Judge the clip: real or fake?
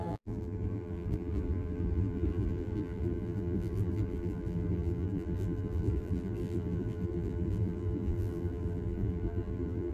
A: fake